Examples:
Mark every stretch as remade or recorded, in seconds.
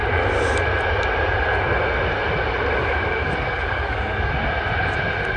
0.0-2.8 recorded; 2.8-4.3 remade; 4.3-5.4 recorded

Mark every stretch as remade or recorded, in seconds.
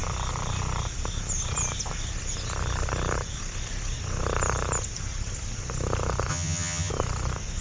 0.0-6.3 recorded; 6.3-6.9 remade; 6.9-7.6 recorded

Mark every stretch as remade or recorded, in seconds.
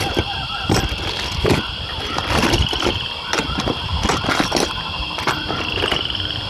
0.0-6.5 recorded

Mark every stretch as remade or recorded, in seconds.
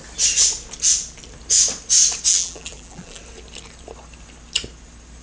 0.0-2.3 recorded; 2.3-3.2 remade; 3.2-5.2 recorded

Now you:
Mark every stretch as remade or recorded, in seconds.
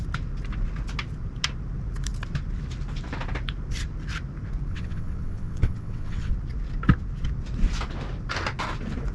0.0-4.7 recorded; 4.7-6.3 remade; 6.3-9.1 recorded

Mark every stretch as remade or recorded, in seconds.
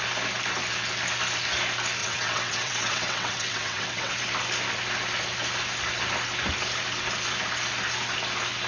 0.0-2.0 recorded; 2.0-4.1 remade; 4.1-8.7 recorded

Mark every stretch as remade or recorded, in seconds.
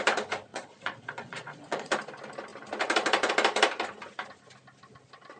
0.0-0.5 recorded; 0.5-1.9 remade; 1.9-5.4 recorded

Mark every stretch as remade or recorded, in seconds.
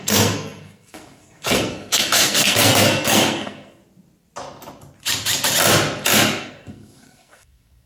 0.0-3.8 remade; 3.8-6.4 recorded; 6.4-7.9 remade